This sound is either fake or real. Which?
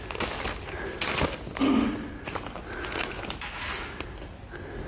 real